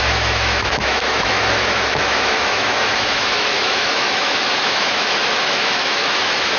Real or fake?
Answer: fake